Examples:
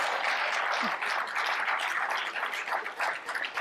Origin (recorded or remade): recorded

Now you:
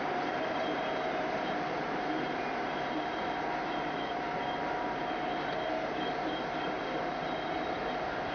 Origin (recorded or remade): remade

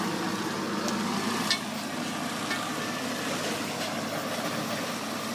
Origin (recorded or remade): recorded